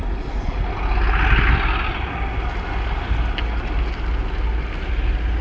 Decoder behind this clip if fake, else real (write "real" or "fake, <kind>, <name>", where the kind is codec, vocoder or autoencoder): real